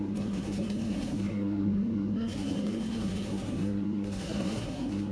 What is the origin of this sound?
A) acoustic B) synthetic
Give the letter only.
B